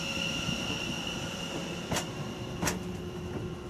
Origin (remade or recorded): recorded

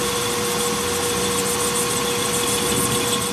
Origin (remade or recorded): recorded